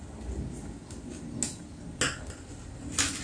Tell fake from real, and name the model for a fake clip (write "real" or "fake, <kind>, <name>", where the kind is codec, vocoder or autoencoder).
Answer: real